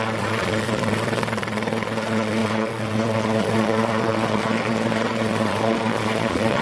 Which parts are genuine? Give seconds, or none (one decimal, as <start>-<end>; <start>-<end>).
none